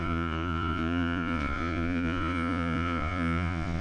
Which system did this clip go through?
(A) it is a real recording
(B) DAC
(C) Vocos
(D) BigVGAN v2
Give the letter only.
C